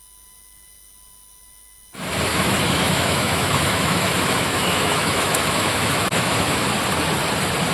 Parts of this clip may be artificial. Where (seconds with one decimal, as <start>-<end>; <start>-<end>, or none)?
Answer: 2.3-6.7